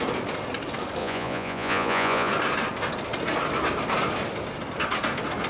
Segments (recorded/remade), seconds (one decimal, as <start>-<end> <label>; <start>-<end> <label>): 0.0-1.0 recorded; 1.0-2.3 remade; 2.3-5.5 recorded